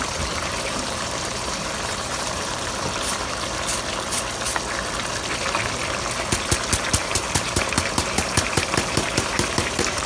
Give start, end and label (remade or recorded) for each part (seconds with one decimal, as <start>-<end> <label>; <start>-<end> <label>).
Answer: 0.0-3.7 remade; 3.7-6.8 recorded; 6.8-10.1 remade